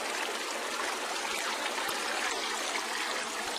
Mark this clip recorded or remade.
recorded